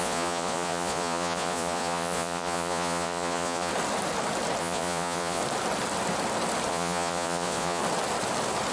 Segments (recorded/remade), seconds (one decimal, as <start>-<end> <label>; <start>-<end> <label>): 0.0-3.7 remade; 3.7-4.6 recorded; 4.6-5.4 remade; 5.4-6.7 recorded; 6.7-7.8 remade; 7.8-8.7 recorded